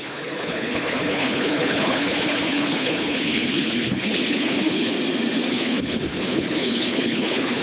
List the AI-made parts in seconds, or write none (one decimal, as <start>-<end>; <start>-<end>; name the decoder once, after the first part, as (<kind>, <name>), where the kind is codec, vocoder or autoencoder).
0.0-4.9 (codec, HILCodec); 5.5-7.6